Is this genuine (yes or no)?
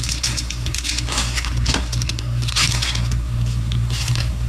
no